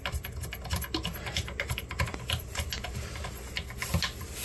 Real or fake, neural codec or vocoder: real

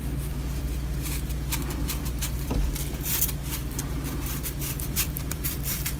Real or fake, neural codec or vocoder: fake, vocoder, BigVGAN v2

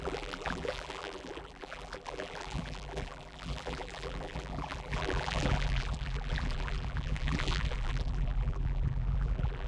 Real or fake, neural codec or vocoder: fake, vocoder, BigVGAN v2